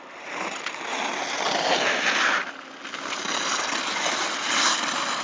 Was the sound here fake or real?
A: real